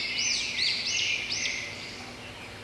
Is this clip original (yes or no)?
yes